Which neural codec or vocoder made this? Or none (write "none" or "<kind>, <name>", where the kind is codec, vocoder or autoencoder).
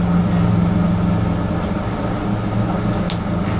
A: none